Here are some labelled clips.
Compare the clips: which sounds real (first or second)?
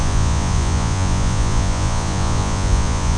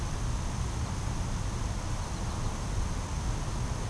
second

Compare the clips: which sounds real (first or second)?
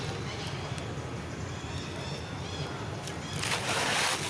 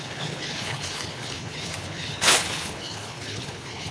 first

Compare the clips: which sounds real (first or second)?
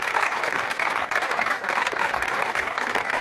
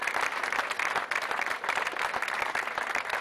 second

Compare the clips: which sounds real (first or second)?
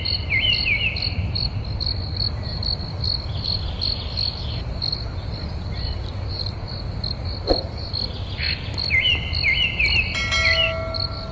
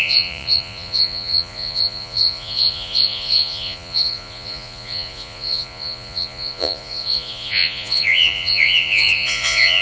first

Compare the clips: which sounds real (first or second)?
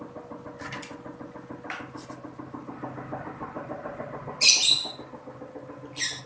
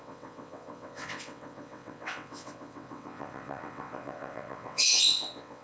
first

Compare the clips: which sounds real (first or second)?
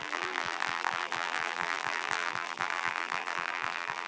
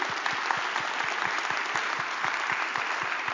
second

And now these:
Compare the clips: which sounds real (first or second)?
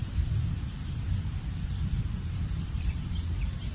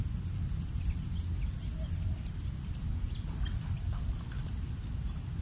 second